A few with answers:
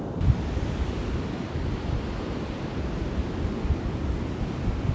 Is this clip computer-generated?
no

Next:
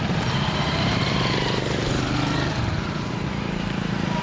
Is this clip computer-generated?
yes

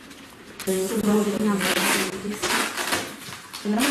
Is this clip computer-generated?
yes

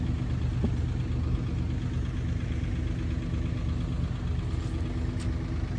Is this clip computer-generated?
no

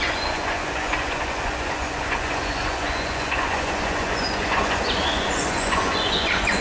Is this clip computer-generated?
yes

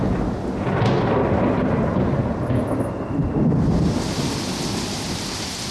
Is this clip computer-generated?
no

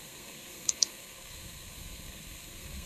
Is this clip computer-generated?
yes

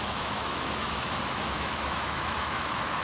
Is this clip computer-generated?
yes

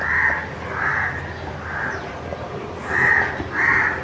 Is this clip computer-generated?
no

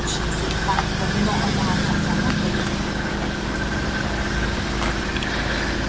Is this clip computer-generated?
no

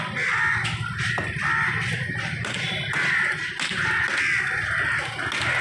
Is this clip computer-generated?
no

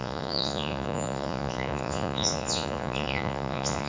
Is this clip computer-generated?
yes